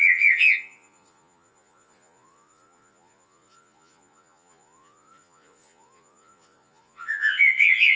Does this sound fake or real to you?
fake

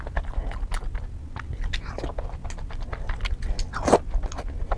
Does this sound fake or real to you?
real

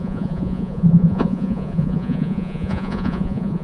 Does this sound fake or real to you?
fake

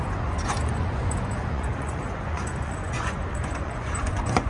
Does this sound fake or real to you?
fake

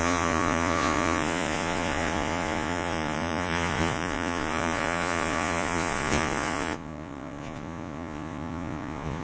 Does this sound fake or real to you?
fake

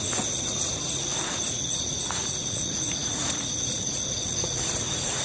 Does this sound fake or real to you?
fake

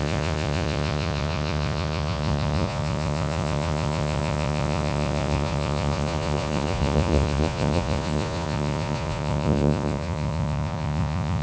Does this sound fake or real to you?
fake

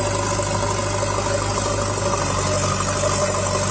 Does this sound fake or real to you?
real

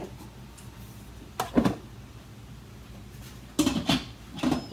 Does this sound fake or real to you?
real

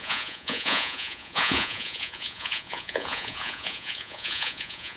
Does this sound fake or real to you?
fake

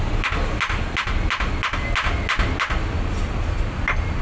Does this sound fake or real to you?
real